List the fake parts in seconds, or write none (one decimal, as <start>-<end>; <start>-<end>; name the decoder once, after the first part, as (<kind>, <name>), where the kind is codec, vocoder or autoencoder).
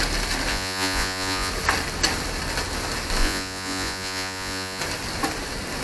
0.5-1.5 (vocoder, Vocos); 3.2-4.8